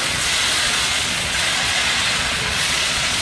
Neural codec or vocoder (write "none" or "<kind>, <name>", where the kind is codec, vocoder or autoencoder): vocoder, Vocos